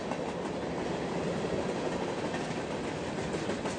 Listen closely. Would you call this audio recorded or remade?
recorded